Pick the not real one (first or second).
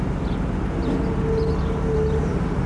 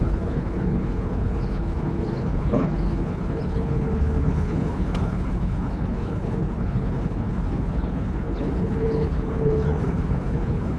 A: second